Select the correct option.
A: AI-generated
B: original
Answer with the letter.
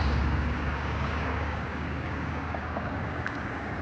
A